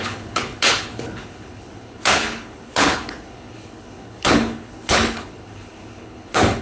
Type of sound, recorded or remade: remade